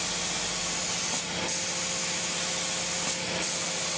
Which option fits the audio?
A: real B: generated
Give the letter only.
A